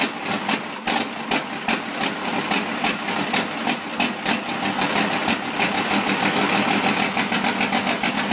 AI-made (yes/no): no